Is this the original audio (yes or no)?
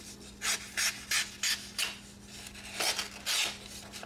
yes